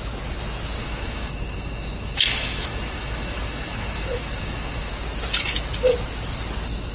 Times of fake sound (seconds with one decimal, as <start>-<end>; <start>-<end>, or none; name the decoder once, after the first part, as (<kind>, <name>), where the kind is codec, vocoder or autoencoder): 0.8-4.9 (autoencoder, DAC-VAE)